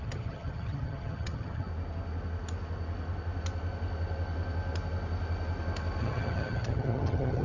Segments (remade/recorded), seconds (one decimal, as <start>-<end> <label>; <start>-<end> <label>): 0.0-1.7 remade; 1.7-6.0 recorded; 6.0-7.4 remade